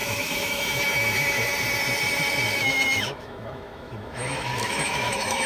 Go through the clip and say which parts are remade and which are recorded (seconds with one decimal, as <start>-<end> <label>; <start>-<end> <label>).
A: 0.0-1.5 remade; 1.5-2.6 recorded; 2.6-5.5 remade